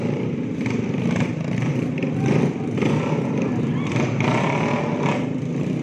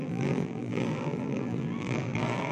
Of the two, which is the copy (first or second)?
second